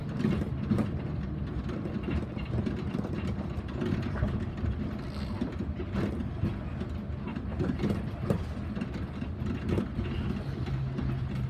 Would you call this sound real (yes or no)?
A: yes